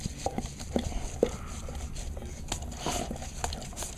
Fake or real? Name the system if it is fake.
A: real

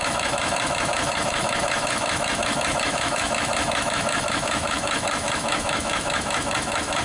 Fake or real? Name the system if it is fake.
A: fake, autoencoder, DAC-VAE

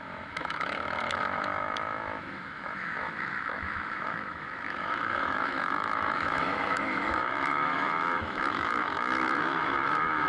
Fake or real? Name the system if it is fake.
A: fake, autoencoder, DAC-VAE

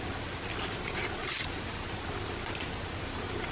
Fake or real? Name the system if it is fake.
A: real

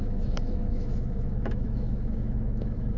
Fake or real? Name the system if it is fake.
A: fake, autoencoder, DAC-VAE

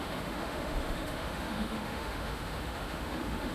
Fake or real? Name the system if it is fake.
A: fake, autoencoder, DAC-VAE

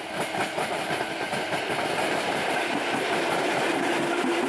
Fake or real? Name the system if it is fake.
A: real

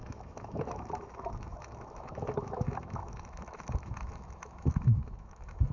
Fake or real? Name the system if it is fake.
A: fake, autoencoder, DAC-VAE